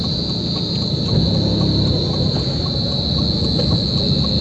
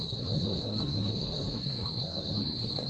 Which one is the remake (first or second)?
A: second